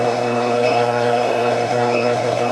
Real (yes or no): no